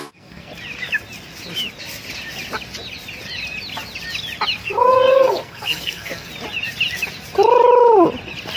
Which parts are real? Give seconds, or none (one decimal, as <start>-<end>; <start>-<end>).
0.5-4.6; 6.3-8.6